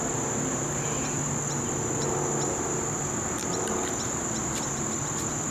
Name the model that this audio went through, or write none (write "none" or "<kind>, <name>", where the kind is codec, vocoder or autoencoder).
none